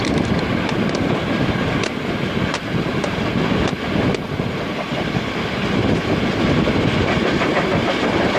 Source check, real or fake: real